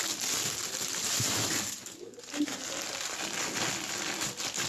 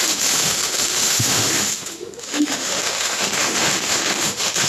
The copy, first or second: second